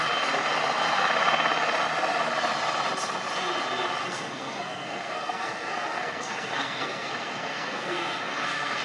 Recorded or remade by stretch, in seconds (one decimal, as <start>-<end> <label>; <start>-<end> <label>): 0.0-4.0 recorded; 4.0-8.8 remade

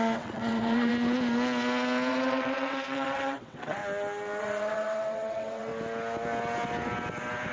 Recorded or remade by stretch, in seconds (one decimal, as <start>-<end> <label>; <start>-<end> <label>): 0.0-0.9 remade; 0.9-2.1 recorded; 2.1-3.8 remade; 3.8-4.4 recorded; 4.4-5.7 remade; 5.7-7.5 recorded

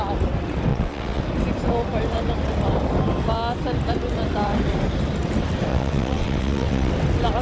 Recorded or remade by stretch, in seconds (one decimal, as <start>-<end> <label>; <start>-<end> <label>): 0.0-0.7 recorded; 0.7-1.2 remade; 1.2-5.7 recorded; 5.7-6.9 remade; 6.9-7.4 recorded

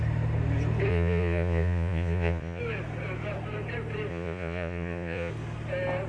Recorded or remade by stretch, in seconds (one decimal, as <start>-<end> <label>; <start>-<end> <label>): 0.0-0.9 recorded; 0.9-2.6 remade; 2.6-4.1 recorded; 4.1-5.3 remade; 5.3-6.1 recorded

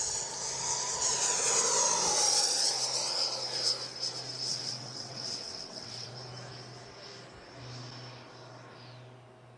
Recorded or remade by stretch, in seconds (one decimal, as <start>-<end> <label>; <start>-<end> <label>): 0.0-4.5 recorded; 4.5-6.1 remade; 6.1-9.6 recorded

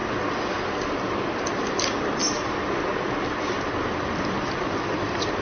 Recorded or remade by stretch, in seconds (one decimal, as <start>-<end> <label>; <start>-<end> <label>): 0.0-1.3 recorded; 1.3-2.2 remade; 2.2-3.3 recorded; 3.3-5.4 remade

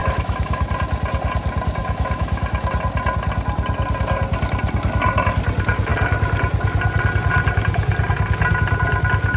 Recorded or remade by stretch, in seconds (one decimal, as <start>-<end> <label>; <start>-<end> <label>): 0.0-0.7 remade; 0.7-1.8 recorded; 1.8-2.7 remade; 2.7-9.4 recorded